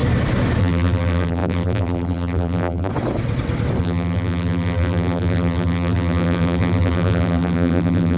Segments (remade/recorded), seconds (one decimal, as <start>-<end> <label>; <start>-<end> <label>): 0.0-0.6 recorded; 0.6-2.9 remade; 2.9-3.8 recorded; 3.8-8.2 remade